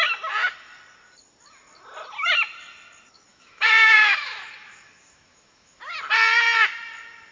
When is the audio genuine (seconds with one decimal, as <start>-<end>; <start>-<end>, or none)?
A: 0.0-3.3; 5.8-7.3